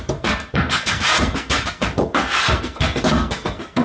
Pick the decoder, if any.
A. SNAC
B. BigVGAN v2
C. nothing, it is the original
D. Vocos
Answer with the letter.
A